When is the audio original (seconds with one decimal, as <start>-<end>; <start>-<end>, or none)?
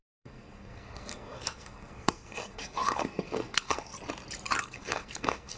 3.9-4.6